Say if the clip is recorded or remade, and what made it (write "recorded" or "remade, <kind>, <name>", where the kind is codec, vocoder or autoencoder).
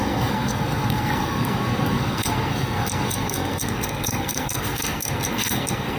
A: remade, codec, SNAC